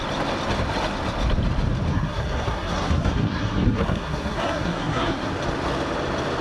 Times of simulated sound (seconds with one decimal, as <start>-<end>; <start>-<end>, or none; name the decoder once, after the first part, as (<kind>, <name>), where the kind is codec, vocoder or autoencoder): 1.9-5.3 (codec, SNAC)